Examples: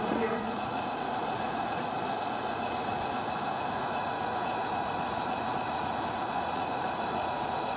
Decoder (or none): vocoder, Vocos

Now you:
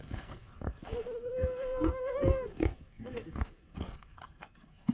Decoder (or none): codec, SNAC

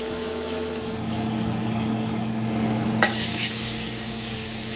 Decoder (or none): codec, DAC